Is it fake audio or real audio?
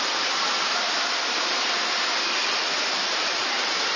fake